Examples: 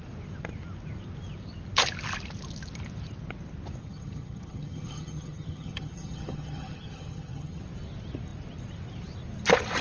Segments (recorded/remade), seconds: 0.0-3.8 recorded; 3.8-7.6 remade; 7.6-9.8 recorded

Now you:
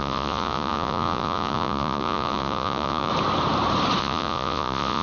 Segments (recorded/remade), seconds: 0.0-3.1 remade; 3.1-4.0 recorded; 4.0-5.0 remade

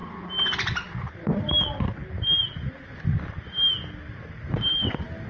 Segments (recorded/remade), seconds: 0.0-5.3 recorded

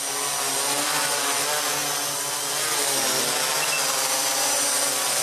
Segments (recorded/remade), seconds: 0.0-5.2 recorded

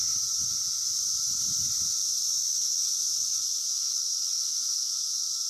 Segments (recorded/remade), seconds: 0.0-2.0 recorded; 2.0-5.5 remade

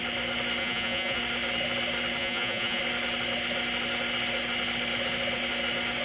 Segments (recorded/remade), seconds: 0.0-0.6 recorded; 0.6-1.2 remade; 1.2-2.2 recorded; 2.2-2.8 remade; 2.8-6.0 recorded